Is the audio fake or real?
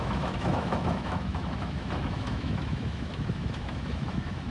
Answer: fake